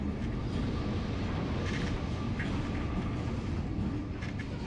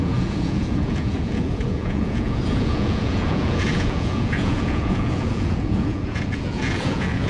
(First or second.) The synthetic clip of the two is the second